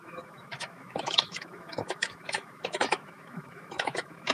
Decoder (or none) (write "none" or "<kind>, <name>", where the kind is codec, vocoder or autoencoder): autoencoder, DAC-VAE